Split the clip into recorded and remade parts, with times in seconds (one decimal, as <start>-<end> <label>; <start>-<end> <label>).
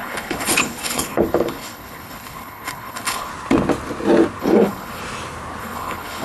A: 0.0-3.3 remade; 3.3-4.4 recorded; 4.4-5.0 remade; 5.0-5.6 recorded; 5.6-6.2 remade